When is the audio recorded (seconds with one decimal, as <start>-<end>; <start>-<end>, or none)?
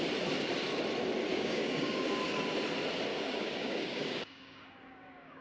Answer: 0.0-1.3; 2.2-3.1